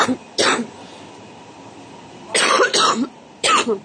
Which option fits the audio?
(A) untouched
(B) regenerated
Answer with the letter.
A